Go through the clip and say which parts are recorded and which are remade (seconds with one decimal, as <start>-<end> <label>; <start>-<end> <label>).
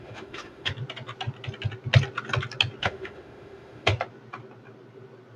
0.0-0.7 remade; 0.7-2.8 recorded; 2.8-3.9 remade; 3.9-5.4 recorded